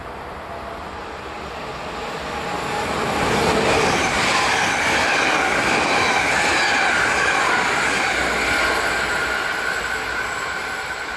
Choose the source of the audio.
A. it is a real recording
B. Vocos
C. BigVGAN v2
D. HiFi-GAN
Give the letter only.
A